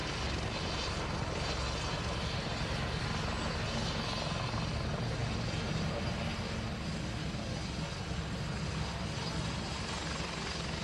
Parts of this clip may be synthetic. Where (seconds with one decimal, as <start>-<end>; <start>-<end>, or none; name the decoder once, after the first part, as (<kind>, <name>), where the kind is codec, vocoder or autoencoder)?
none